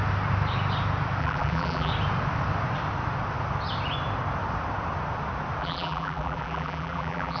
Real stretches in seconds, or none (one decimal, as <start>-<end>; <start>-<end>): 0.0-1.2; 1.9-5.6